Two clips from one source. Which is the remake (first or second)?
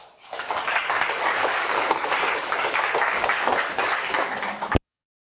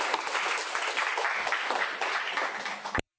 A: first